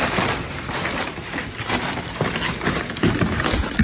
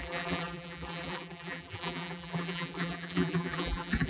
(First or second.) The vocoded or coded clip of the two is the second